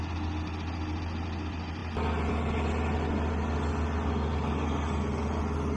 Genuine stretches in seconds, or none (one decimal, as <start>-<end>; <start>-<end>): 0.0-5.8